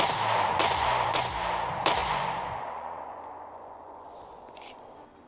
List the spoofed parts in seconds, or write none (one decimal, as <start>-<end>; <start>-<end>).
0.5-1.3; 2.0-4.8